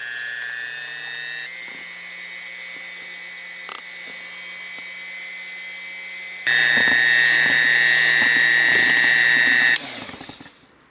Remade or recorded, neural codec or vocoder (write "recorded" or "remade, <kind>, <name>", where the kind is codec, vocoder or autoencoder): recorded